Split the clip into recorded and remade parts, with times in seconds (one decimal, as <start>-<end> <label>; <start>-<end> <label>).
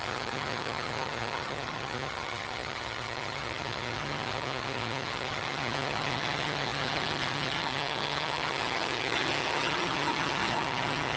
0.0-11.2 remade